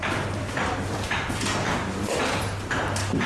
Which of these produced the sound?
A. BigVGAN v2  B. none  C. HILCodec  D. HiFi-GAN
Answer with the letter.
A